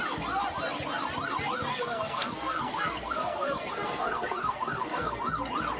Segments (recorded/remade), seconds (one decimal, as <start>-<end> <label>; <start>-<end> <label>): 0.0-1.7 recorded; 1.7-5.2 remade; 5.2-5.8 recorded